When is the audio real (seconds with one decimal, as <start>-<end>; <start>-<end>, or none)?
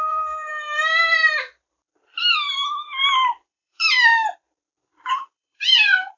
0.5-3.3; 4.1-5.1